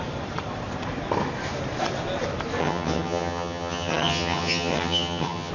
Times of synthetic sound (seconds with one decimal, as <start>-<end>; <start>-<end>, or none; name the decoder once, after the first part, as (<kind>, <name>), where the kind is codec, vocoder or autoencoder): 2.6-5.5 (vocoder, HiFi-GAN)